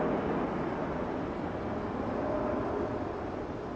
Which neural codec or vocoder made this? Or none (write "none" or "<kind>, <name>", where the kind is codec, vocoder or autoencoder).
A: none